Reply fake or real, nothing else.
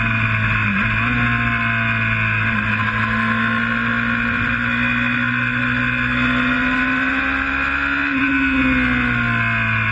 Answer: real